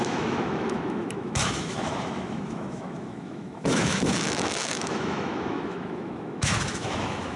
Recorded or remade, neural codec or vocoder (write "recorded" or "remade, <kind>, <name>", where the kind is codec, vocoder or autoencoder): remade, autoencoder, DAC-VAE